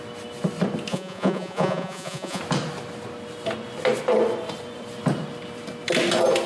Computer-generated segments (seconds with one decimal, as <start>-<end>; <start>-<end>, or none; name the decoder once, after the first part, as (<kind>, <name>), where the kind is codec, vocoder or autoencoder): 0.9-2.4 (vocoder, Vocos)